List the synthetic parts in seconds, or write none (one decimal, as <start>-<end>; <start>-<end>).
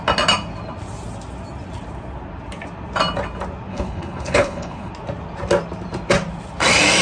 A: 3.7-4.9